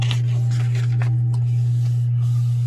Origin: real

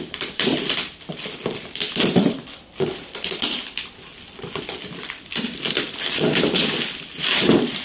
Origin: fake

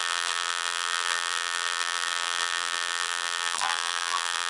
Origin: fake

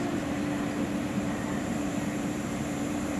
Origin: fake